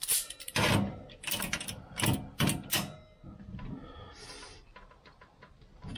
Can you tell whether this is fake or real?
real